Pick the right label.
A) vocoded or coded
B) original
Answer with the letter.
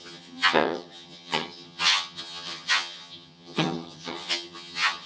A